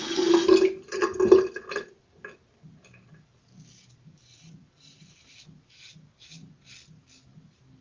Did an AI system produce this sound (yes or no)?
no